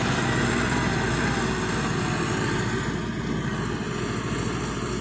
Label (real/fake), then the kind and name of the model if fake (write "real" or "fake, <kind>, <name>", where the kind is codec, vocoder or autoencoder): real